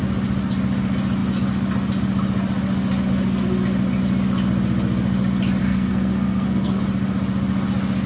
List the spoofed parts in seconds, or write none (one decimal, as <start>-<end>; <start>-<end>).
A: 5.6-6.8